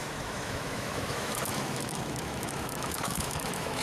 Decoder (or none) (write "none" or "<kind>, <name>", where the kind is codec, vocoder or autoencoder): autoencoder, DAC-VAE